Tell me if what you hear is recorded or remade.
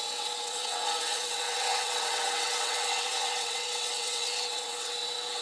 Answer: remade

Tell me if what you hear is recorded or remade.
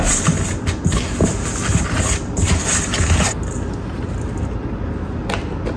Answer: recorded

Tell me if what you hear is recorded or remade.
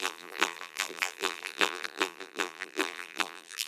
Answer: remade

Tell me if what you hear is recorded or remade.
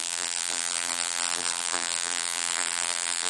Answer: remade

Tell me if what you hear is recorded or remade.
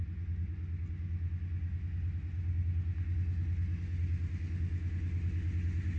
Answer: recorded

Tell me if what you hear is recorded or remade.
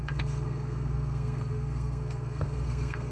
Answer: remade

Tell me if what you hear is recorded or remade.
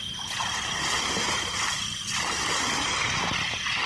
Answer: recorded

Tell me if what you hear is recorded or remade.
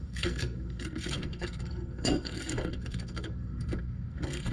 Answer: remade